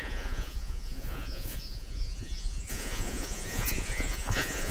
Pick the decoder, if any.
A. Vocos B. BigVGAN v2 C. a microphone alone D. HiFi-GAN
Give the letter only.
A